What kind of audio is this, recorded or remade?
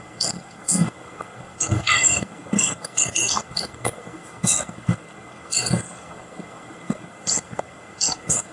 remade